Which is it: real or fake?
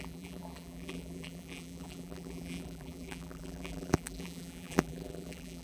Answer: fake